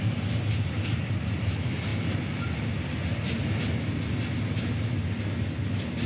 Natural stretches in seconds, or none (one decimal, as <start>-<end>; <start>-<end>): 0.0-6.1